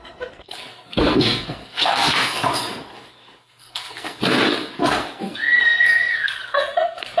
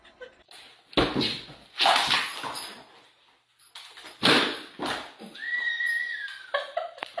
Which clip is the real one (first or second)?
second